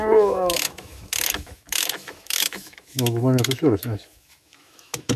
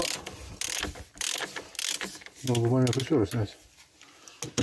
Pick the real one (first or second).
second